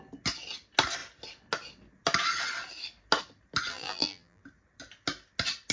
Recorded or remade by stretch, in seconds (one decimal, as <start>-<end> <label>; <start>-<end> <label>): 0.0-3.7 recorded; 3.7-4.4 remade; 4.4-5.7 recorded